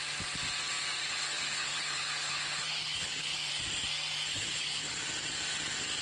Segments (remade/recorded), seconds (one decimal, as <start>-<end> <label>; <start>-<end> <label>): 0.0-1.0 recorded; 1.0-3.5 remade; 3.5-4.3 recorded; 4.3-5.0 remade; 5.0-6.0 recorded